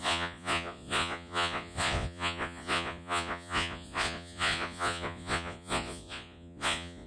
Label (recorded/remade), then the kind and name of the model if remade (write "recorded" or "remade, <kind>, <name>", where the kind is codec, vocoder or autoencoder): remade, vocoder, Vocos